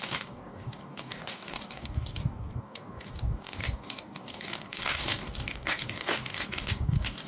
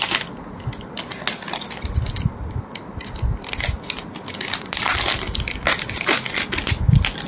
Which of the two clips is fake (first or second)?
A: first